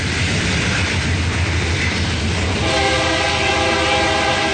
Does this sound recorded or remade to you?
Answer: recorded